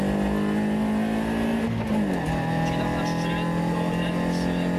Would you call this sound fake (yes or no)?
no